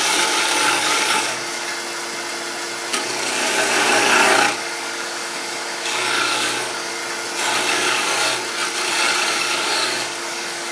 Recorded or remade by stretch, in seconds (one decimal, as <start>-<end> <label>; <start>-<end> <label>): 0.0-1.7 remade; 1.7-3.0 recorded; 3.0-7.0 remade; 7.0-7.7 recorded; 7.7-8.3 remade; 8.3-8.9 recorded; 8.9-10.7 remade